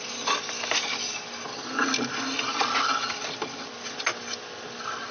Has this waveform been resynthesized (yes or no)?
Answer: no